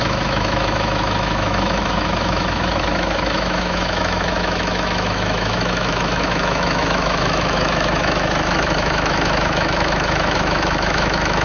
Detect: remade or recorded remade